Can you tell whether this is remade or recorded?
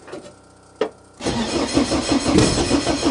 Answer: recorded